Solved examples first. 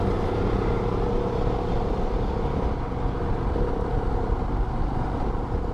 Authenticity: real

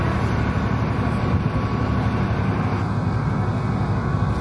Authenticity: real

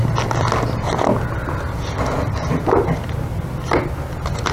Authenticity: real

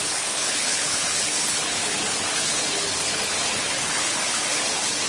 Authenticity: fake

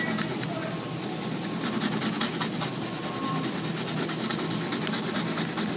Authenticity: real